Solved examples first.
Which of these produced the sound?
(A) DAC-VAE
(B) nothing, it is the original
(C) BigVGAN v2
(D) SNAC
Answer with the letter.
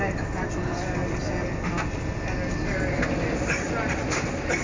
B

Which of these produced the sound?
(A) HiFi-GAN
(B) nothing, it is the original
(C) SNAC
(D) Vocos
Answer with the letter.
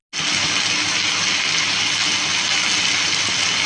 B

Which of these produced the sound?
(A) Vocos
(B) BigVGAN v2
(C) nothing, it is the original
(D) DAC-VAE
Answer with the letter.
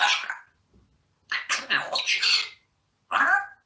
C